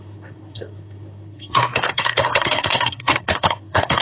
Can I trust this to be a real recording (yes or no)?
no